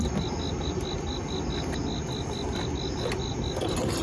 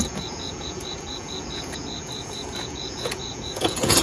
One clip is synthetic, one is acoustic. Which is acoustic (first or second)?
first